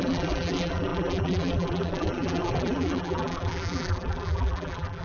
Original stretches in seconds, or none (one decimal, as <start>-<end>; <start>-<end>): none